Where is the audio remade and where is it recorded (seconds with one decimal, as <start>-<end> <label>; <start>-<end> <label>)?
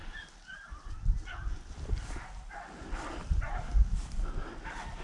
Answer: 0.0-5.0 recorded